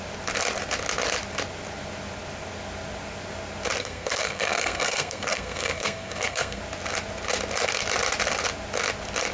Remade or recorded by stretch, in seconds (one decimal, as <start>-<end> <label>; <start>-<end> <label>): 0.0-3.8 recorded; 3.8-6.6 remade; 6.6-9.3 recorded